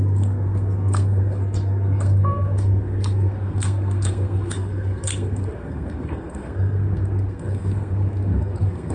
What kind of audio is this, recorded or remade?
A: remade